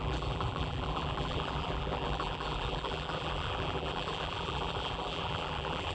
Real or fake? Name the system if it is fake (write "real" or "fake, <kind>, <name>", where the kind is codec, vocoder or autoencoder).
fake, vocoder, BigVGAN v2